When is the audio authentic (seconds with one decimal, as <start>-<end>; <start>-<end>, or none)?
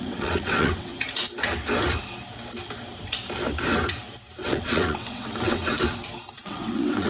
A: 0.9-4.4; 5.7-6.3